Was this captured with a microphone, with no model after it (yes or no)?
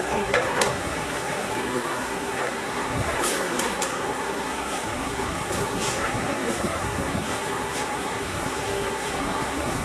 no